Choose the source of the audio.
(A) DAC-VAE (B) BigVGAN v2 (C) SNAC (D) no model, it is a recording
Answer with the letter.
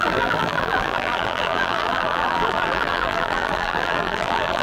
B